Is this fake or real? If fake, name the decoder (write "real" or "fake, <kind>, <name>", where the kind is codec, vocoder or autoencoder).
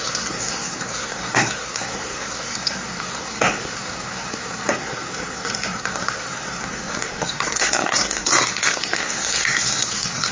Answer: fake, codec, SNAC